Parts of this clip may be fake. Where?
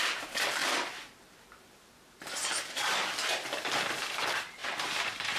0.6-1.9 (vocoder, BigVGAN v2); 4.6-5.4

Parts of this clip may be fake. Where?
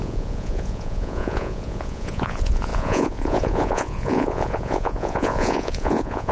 0.0-6.3 (vocoder, Vocos)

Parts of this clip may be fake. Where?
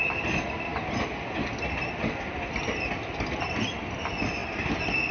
none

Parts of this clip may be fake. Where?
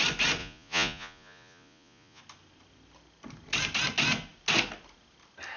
0.4-2.2 (vocoder, Vocos)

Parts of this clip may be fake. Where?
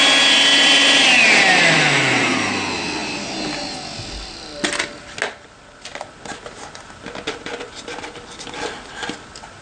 0.5-1.2 (vocoder, BigVGAN v2)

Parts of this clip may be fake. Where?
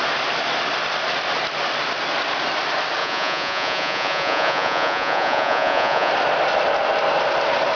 3.0-6.1 (vocoder, Vocos)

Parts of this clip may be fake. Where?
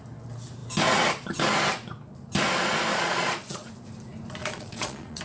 2.9-3.7 (vocoder, Vocos); 4.4-5.2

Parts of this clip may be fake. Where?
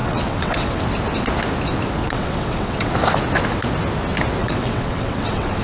0.0-0.8 (vocoder, WaveNeXt); 2.0-2.9; 4.4-5.6